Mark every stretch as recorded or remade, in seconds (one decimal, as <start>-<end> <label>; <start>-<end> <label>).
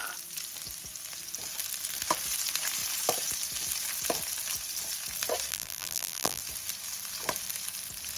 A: 0.0-5.5 recorded; 5.5-6.4 remade; 6.4-8.2 recorded